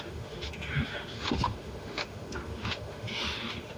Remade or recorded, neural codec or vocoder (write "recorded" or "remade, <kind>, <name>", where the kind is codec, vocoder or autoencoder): remade, autoencoder, DAC-VAE